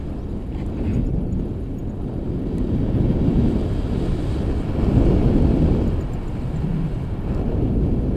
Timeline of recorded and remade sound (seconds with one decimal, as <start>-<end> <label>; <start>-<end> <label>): 0.0-8.2 recorded